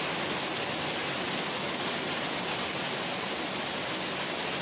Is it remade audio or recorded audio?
recorded